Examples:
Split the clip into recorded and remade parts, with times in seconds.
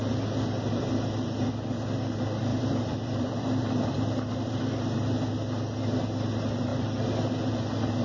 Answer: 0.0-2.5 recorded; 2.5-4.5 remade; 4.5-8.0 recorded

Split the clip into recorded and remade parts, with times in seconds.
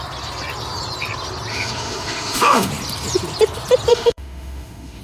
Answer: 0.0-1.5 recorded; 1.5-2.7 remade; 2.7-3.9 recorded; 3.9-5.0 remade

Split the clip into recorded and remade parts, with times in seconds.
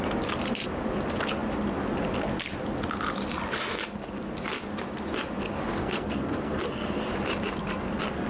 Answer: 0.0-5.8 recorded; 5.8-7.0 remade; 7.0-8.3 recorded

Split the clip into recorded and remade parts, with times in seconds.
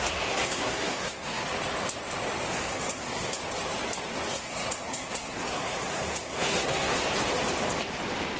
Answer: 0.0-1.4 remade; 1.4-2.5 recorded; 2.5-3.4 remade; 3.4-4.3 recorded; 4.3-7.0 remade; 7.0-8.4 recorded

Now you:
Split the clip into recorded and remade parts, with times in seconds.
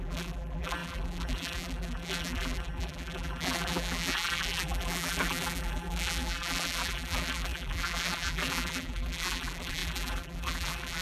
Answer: 0.0-11.0 remade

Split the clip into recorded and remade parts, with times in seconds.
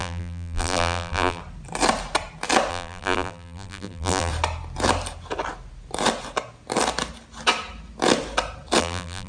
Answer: 0.0-1.4 remade; 1.4-2.7 recorded; 2.7-4.3 remade; 4.3-8.8 recorded; 8.8-9.3 remade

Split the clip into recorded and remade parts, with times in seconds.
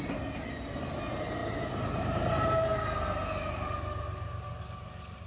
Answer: 0.0-5.3 recorded